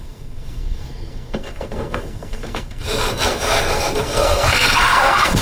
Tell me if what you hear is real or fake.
fake